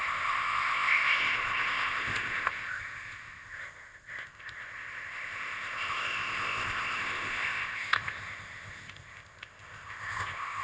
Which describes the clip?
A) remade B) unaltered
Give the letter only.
A